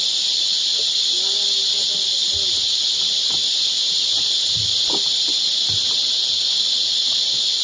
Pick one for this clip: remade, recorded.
recorded